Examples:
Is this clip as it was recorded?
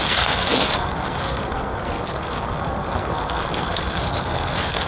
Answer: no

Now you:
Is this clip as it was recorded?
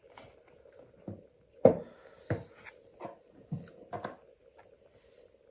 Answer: yes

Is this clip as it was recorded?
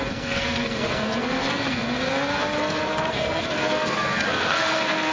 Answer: no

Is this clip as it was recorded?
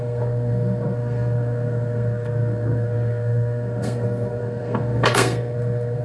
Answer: no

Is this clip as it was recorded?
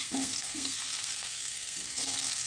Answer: no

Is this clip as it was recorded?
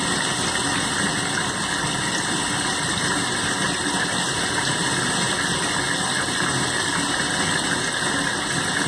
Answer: yes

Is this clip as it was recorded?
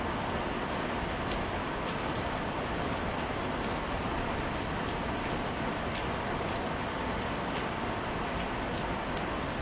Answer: yes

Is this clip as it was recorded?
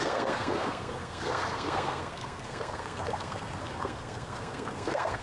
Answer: no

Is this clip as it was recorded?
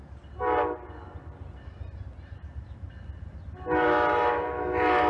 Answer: yes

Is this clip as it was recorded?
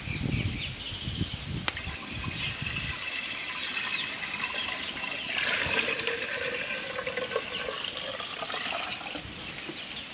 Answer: yes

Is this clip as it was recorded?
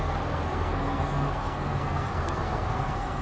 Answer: no